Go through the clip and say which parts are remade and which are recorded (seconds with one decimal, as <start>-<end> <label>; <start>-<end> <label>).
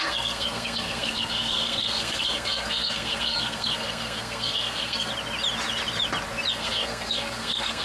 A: 0.0-5.1 remade; 5.1-6.5 recorded; 6.5-7.8 remade